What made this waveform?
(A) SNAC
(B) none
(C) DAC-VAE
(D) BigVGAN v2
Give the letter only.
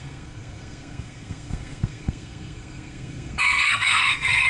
A